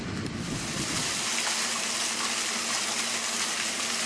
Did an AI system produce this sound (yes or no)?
no